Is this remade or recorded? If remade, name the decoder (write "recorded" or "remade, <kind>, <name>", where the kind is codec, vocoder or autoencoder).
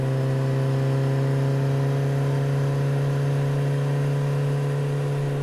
recorded